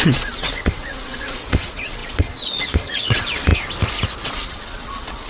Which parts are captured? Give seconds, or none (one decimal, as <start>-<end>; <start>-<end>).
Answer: 3.5-4.1